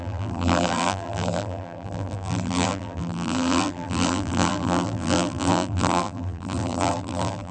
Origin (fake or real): fake